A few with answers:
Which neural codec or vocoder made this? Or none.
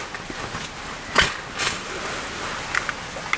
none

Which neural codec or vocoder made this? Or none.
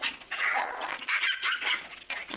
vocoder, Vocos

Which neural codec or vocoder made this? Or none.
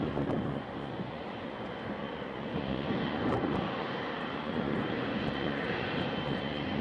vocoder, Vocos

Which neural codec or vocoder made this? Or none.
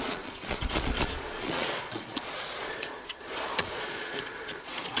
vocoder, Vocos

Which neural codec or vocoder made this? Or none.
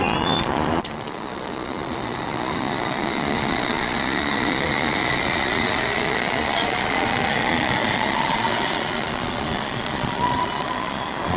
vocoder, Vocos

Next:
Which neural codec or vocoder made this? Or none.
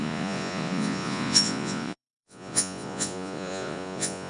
vocoder, Vocos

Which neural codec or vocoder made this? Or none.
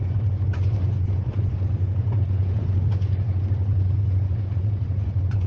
vocoder, Vocos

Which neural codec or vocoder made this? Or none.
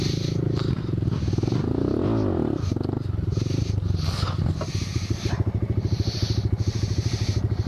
none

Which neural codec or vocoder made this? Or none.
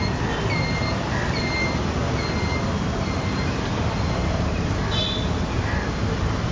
none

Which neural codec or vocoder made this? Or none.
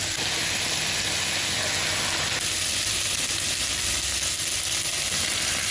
none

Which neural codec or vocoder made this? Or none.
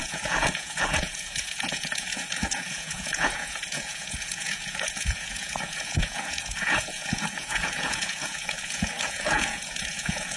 vocoder, Vocos